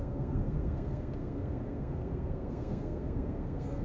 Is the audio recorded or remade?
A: remade